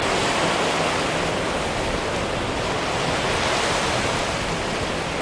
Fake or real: real